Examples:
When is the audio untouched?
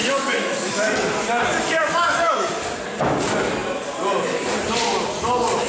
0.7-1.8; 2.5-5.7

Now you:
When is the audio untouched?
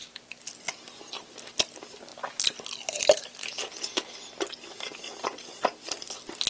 0.0-6.5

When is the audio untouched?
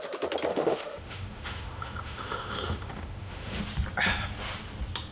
0.0-0.5; 3.6-5.1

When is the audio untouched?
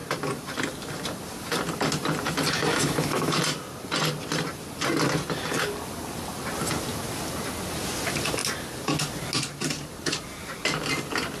0.0-2.7; 3.4-11.4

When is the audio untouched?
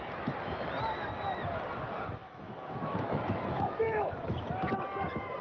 0.0-2.2; 4.5-5.4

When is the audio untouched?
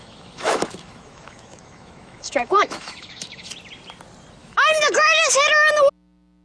3.5-4.4; 5.3-6.4